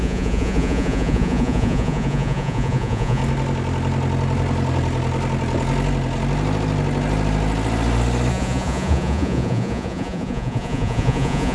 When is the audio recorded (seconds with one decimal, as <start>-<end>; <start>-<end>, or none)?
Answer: 3.2-8.3